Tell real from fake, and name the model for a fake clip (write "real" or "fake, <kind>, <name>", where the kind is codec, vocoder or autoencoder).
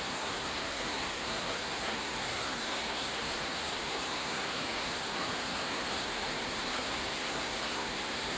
fake, codec, SNAC